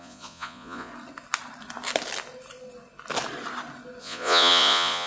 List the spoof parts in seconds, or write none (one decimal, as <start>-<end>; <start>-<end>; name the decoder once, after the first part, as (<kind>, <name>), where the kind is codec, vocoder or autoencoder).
0.0-0.9 (vocoder, Vocos); 4.0-5.1

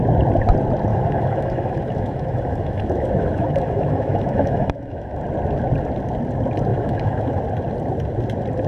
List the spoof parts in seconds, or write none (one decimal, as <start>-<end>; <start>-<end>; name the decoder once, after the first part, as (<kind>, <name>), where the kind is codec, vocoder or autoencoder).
0.9-5.2 (autoencoder, DAC-VAE); 6.7-7.4

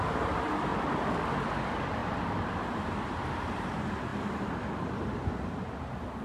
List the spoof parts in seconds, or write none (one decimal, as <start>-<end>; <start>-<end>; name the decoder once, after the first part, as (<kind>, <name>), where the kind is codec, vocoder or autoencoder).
2.0-2.5 (vocoder, BigVGAN v2)

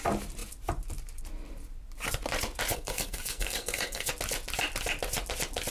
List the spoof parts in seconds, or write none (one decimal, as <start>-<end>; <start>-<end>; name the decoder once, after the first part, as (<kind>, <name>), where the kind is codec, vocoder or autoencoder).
2.7-4.1 (codec, SNAC)